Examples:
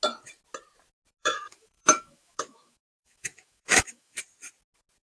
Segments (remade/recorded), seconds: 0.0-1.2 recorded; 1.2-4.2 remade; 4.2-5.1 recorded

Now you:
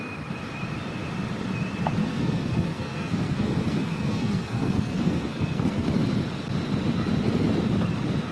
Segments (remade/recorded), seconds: 0.0-2.0 recorded; 2.0-5.9 remade; 5.9-8.3 recorded

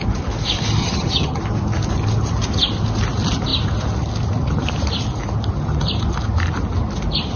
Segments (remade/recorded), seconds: 0.0-0.8 recorded; 0.8-1.4 remade; 1.4-7.4 recorded

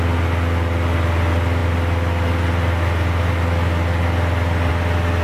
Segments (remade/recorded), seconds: 0.0-5.2 recorded

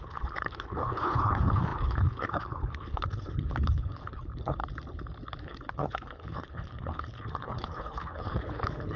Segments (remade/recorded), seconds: 0.0-4.6 remade; 4.6-5.4 recorded; 5.4-9.0 remade

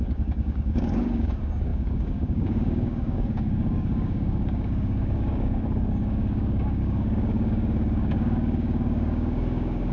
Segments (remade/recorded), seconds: 0.0-9.9 remade